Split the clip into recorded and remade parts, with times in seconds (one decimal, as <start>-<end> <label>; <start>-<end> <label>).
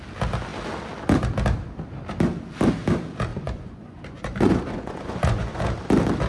0.0-3.3 recorded; 3.3-5.6 remade; 5.6-6.3 recorded